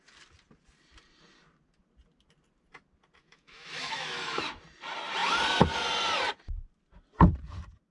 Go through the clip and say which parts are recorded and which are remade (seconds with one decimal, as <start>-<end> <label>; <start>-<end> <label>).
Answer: 0.0-3.2 recorded; 3.2-4.4 remade; 4.4-7.9 recorded